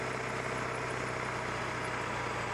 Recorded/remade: recorded